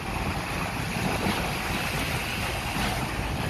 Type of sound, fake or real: real